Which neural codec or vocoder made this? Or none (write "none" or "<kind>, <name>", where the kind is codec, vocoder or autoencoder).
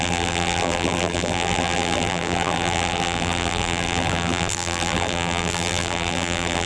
vocoder, BigVGAN v2